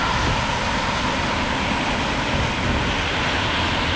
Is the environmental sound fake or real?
real